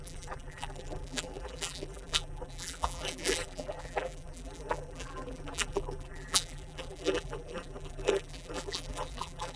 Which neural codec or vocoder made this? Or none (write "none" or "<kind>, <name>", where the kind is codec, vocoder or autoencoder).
vocoder, BigVGAN v2